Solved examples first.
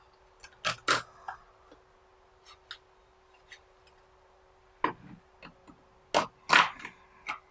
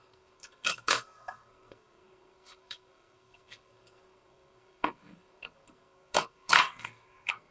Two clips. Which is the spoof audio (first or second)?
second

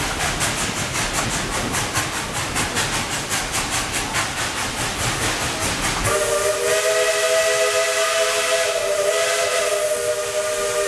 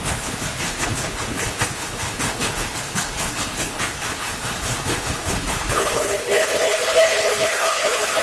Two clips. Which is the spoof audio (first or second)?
second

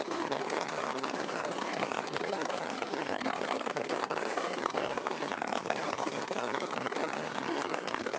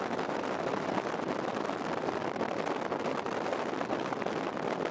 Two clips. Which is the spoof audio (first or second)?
first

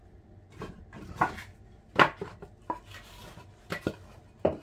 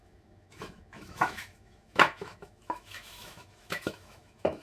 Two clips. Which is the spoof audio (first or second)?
second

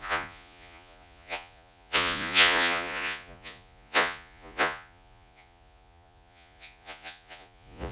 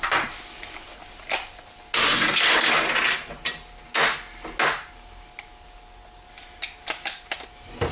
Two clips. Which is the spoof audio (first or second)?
first